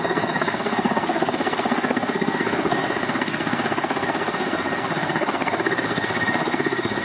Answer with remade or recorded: remade